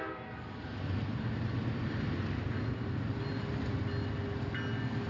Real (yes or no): yes